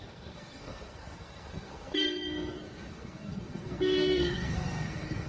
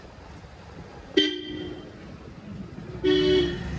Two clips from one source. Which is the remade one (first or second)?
first